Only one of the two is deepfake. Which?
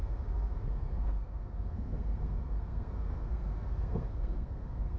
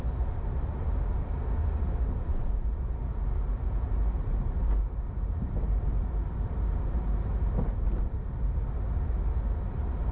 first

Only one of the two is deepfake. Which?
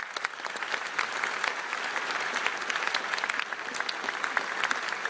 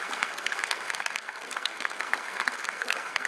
second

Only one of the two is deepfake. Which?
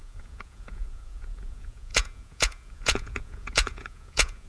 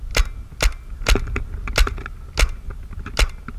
first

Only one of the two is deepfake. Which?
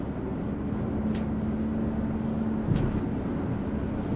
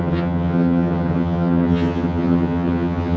second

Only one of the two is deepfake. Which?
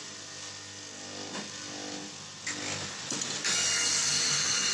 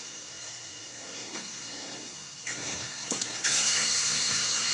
second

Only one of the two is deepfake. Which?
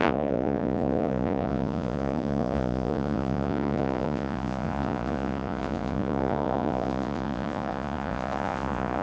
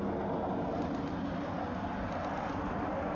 first